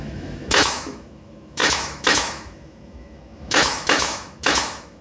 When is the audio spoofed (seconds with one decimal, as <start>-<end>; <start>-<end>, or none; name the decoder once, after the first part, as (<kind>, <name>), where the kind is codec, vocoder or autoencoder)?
0.0-5.0 (autoencoder, DAC-VAE)